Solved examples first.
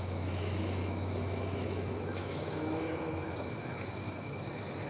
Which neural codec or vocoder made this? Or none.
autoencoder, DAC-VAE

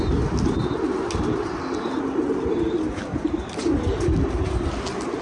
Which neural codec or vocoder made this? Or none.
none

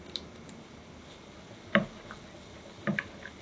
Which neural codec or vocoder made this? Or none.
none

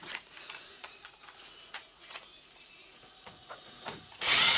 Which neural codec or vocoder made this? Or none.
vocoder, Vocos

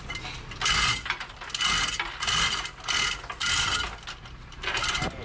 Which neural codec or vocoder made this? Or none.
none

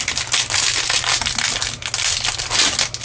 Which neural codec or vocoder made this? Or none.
none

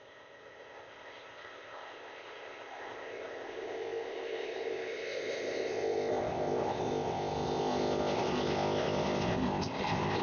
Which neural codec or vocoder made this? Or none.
codec, ZipCodec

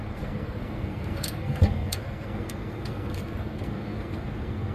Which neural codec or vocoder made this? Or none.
codec, SNAC